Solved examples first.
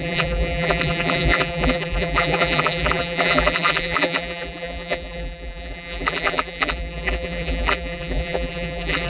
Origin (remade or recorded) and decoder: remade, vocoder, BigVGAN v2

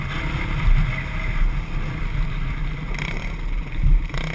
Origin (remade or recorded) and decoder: recorded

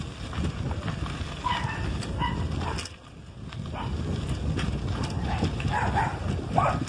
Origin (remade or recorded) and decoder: recorded